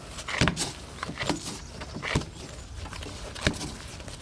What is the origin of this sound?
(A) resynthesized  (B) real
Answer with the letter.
B